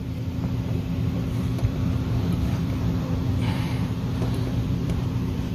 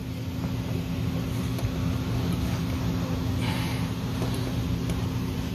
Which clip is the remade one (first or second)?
first